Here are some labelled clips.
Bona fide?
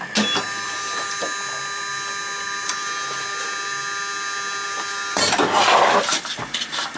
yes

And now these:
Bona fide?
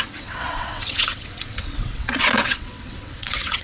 no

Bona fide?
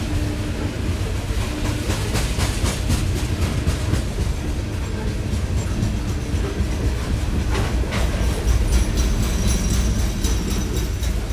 yes